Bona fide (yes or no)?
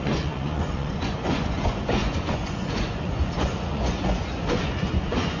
no